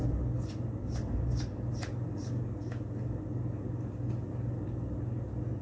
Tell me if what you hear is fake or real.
real